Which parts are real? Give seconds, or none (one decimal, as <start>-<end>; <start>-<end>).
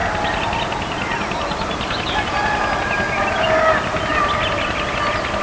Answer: 0.0-5.4